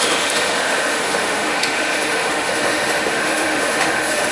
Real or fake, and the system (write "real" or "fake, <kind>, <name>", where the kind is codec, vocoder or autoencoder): fake, autoencoder, DAC-VAE